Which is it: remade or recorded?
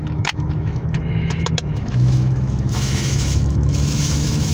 remade